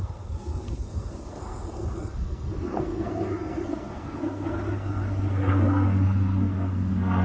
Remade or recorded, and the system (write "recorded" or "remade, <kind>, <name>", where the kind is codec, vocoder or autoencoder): remade, codec, SNAC